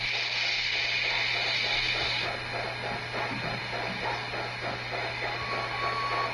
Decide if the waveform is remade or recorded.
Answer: recorded